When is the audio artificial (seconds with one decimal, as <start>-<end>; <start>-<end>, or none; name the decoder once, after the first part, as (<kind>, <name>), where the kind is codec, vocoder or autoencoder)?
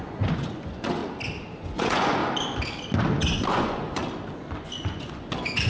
0.0-1.0 (vocoder, Vocos); 1.6-2.2; 3.2-4.0; 4.6-5.7